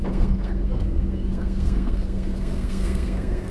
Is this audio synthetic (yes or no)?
yes